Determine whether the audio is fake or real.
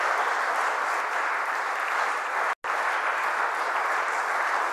real